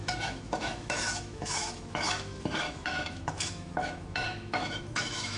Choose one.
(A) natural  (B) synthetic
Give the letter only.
B